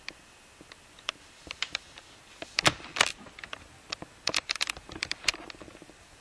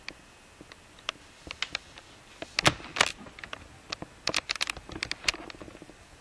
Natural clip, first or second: second